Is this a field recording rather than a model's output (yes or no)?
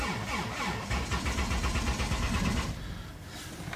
yes